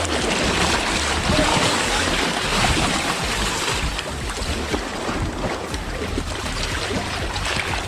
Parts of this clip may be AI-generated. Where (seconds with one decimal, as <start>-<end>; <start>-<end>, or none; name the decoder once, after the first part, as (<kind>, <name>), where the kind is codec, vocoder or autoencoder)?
1.5-2.1 (codec, DAC)